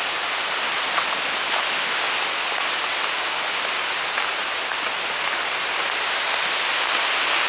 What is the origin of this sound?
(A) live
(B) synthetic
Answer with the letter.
A